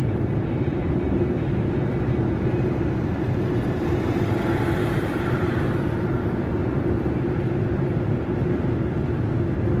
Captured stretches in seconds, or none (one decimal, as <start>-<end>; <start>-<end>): 1.5-4.8; 5.5-9.8